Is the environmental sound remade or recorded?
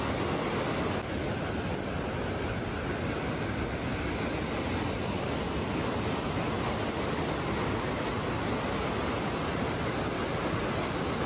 recorded